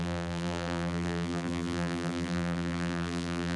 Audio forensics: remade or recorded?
remade